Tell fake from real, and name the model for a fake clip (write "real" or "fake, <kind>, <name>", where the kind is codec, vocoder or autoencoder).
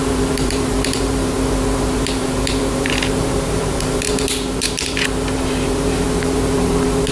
fake, vocoder, BigVGAN v2